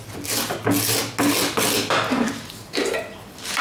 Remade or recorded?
recorded